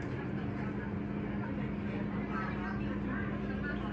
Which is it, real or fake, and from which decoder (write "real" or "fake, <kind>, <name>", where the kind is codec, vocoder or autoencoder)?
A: real